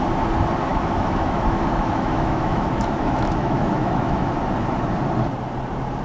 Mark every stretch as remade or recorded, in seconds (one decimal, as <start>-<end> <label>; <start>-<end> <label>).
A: 0.0-0.7 recorded; 0.7-4.3 remade; 4.3-6.0 recorded